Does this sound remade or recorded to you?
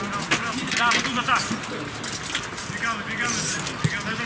recorded